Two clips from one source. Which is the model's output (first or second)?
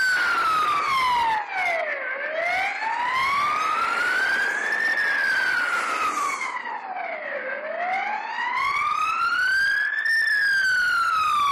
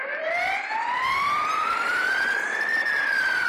second